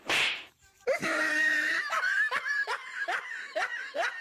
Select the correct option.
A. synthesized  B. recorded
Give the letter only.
A